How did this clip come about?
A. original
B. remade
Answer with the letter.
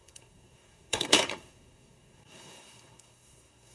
B